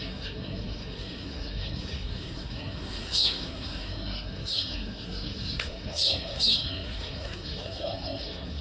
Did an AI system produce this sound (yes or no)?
yes